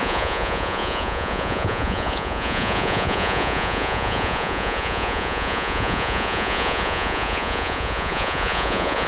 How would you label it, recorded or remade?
remade